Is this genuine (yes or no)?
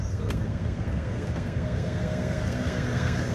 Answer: no